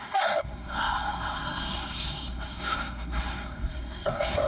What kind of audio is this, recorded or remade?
remade